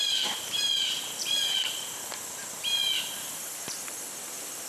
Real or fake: real